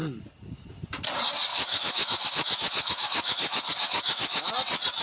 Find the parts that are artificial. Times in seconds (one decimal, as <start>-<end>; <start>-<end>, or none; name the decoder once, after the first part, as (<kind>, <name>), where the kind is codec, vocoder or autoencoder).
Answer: 1.5-4.5 (autoencoder, DAC-VAE)